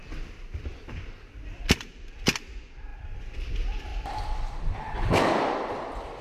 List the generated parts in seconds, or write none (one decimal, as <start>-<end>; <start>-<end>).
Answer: 1.3-6.2